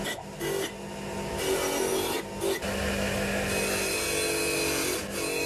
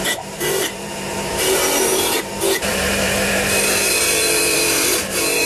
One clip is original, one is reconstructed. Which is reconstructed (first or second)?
second